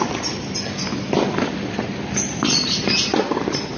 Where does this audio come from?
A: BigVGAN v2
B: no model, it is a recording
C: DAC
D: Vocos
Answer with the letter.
B